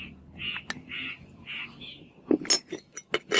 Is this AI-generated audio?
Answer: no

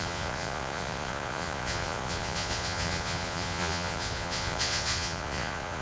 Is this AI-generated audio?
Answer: yes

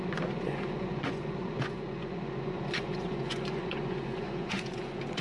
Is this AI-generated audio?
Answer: yes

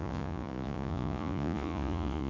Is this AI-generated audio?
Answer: yes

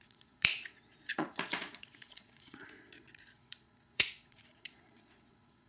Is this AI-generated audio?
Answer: yes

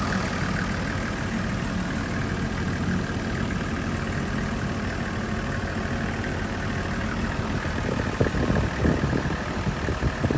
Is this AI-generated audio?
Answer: no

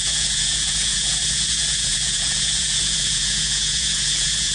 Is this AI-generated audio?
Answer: yes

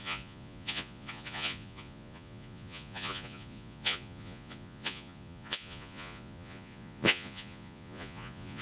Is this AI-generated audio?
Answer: yes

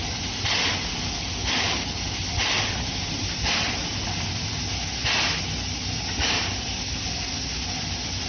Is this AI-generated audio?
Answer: no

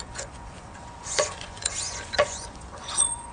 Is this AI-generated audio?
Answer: yes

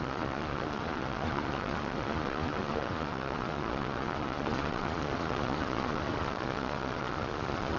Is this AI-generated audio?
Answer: yes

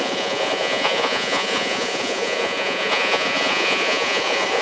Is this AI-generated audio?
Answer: yes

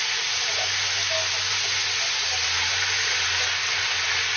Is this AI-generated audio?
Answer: no